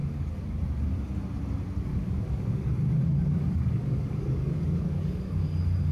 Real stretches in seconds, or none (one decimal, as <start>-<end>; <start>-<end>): 0.6-1.9; 5.4-5.9